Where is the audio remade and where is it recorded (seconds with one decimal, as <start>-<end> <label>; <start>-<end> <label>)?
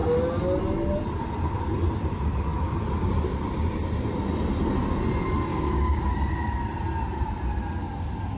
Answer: 0.0-5.5 recorded; 5.5-6.1 remade; 6.1-8.4 recorded